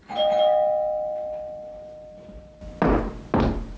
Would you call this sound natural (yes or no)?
yes